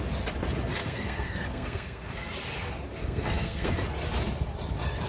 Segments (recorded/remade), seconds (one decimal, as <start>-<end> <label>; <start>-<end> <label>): 0.0-0.8 recorded; 0.8-2.3 remade; 2.3-3.0 recorded; 3.0-3.7 remade; 3.7-5.1 recorded